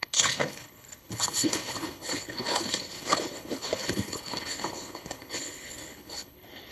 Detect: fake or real fake